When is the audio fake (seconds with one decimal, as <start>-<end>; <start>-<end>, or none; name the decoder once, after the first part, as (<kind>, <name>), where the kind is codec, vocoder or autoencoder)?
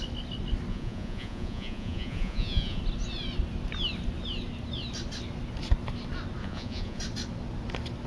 0.7-2.8 (vocoder, Vocos); 6.4-7.0